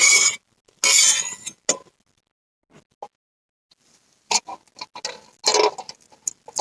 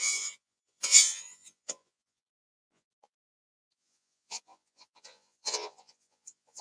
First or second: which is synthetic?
second